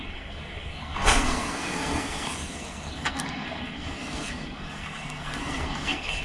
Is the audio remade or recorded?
remade